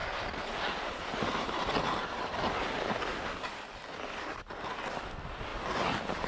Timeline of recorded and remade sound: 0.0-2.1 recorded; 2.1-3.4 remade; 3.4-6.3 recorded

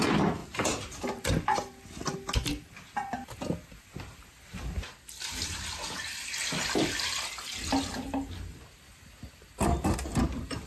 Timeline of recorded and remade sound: 0.0-0.4 recorded; 0.4-1.3 remade; 1.3-10.7 recorded